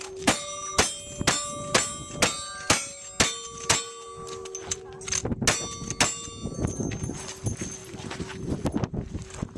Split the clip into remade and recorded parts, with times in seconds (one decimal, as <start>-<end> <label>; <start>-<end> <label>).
0.0-9.6 recorded